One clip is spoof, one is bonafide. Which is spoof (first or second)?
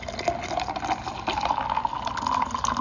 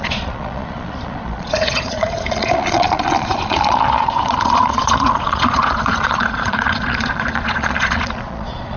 second